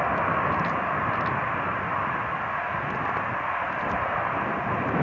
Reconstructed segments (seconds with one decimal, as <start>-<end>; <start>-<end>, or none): none